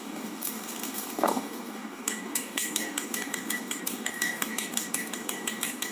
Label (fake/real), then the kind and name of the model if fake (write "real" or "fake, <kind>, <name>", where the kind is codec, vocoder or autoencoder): fake, codec, DAC